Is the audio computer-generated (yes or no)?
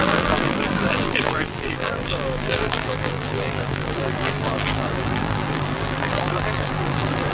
yes